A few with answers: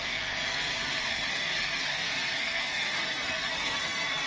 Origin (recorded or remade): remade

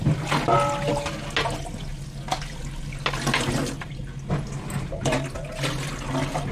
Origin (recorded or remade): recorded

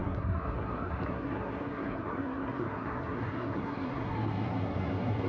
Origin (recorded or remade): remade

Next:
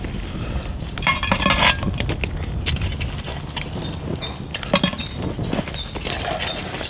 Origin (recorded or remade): recorded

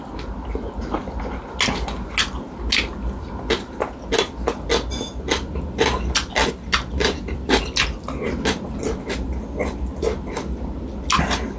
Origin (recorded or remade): recorded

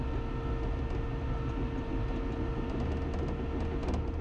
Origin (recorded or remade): recorded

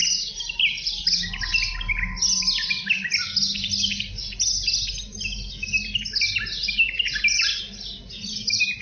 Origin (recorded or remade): recorded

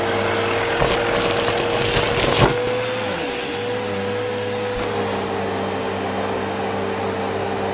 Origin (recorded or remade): recorded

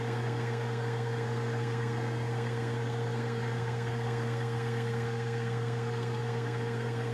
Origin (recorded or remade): remade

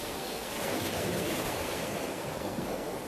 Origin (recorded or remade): remade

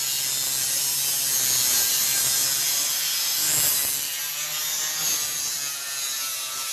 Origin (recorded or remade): recorded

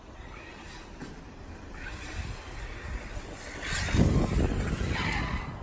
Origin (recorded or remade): recorded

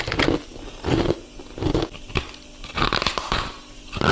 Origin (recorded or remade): recorded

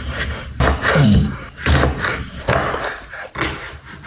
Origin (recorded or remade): recorded